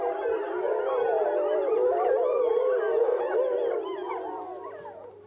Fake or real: fake